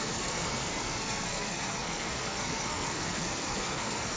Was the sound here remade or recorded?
remade